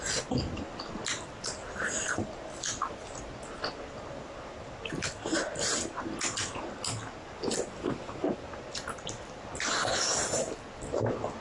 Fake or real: real